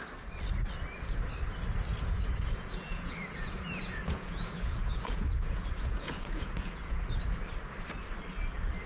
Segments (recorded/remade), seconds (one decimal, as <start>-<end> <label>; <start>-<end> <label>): 0.0-1.9 recorded; 1.9-7.0 remade; 7.0-8.9 recorded